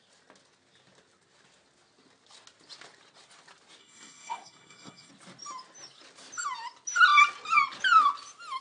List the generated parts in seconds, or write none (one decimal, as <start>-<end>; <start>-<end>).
3.8-5.1